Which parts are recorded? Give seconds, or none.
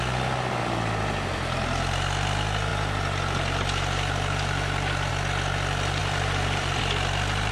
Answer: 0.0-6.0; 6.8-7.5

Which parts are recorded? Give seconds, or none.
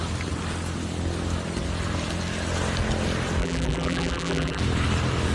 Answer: 0.0-3.4; 4.6-5.3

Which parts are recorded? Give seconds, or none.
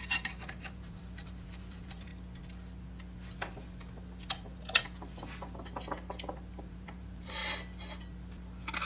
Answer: 2.1-6.5; 7.4-8.9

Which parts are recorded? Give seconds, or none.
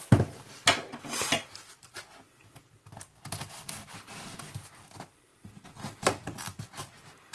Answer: 0.0-1.3; 2.1-3.8; 4.4-5.3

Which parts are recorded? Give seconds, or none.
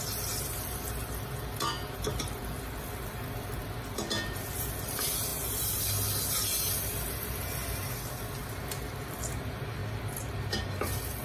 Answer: 0.0-11.2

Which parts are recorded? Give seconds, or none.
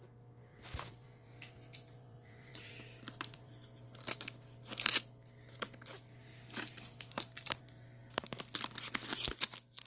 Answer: 0.0-0.5; 4.3-6.3; 7.6-9.9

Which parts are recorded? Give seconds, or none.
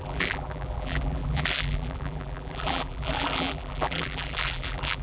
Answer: none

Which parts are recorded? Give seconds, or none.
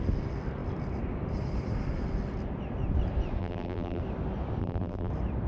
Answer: 0.0-3.4; 4.0-4.6; 5.1-5.5